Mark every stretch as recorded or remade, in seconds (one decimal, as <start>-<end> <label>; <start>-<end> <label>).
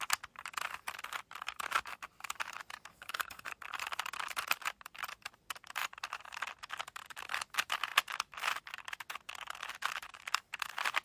0.0-2.9 recorded; 2.9-3.5 remade; 3.5-11.0 recorded